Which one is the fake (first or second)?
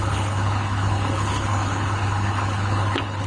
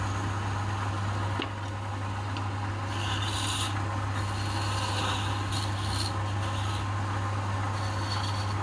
first